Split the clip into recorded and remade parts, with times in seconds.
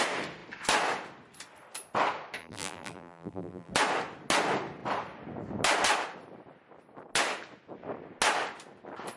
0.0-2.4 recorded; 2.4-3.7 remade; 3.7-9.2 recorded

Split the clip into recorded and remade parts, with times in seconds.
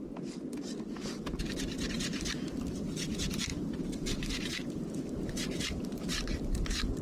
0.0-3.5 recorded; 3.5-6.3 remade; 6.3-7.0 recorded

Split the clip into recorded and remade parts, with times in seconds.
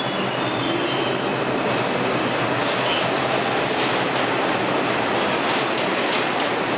0.0-6.8 recorded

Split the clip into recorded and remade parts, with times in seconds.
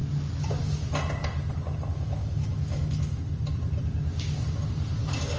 0.0-1.9 recorded; 1.9-3.2 remade; 3.2-5.4 recorded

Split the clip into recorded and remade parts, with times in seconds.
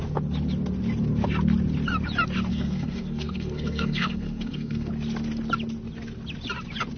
0.0-2.5 recorded; 2.5-4.9 remade; 4.9-7.0 recorded